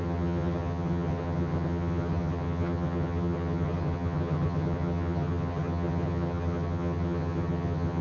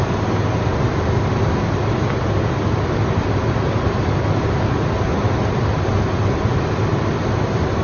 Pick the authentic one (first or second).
second